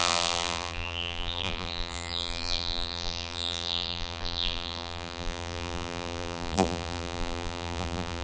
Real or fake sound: fake